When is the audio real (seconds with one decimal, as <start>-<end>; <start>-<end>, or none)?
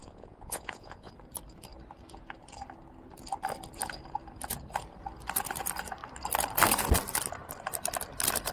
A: 1.1-8.5